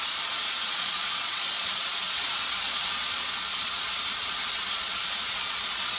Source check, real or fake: fake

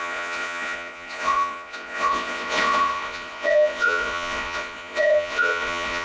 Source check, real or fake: fake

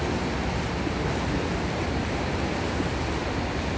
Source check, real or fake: real